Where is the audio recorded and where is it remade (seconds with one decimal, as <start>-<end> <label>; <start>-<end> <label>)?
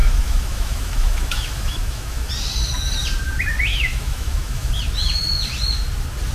0.0-2.3 remade; 2.3-3.7 recorded; 3.7-4.7 remade; 4.7-6.3 recorded